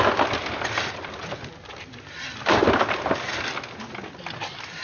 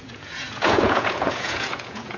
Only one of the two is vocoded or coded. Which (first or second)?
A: second